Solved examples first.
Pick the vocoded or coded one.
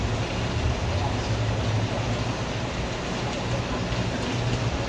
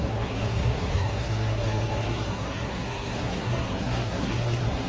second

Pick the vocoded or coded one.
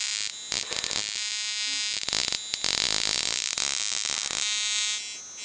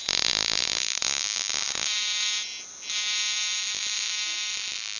second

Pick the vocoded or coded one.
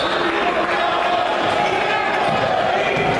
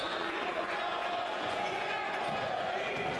second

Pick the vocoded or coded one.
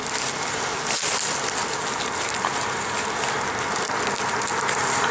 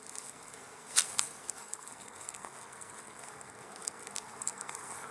second